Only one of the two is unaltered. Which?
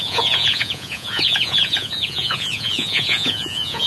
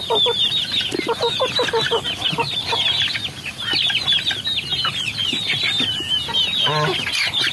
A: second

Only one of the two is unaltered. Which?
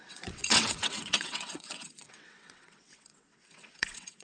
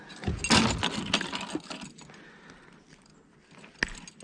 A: second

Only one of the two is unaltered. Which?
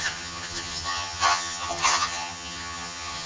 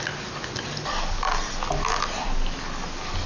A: second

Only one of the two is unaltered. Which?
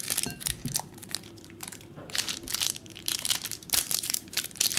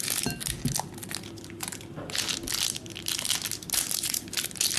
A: second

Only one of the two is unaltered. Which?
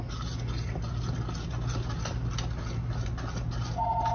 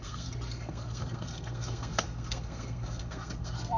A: first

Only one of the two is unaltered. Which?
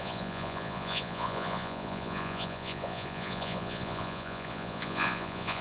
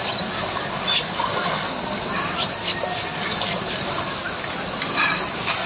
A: second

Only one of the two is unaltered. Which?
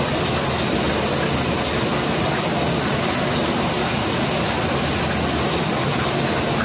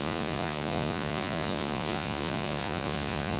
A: first